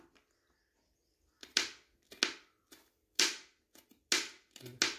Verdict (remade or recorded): recorded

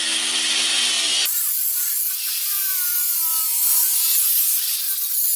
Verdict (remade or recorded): recorded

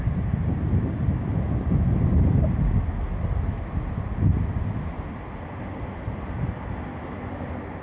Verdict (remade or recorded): recorded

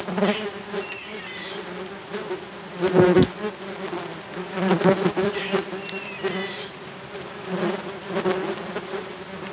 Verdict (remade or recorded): recorded